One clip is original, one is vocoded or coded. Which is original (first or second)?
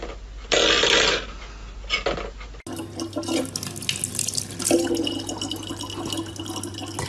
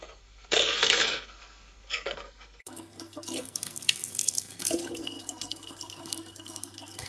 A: first